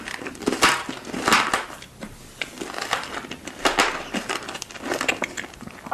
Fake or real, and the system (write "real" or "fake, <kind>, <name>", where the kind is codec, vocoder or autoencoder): real